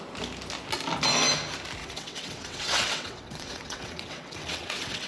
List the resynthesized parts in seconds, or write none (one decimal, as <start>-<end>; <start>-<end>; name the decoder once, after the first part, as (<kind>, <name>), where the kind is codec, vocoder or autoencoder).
1.8-5.1 (vocoder, WaveNeXt)